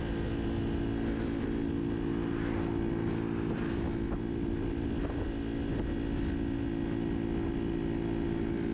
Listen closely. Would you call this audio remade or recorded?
recorded